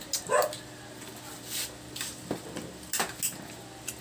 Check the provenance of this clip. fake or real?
real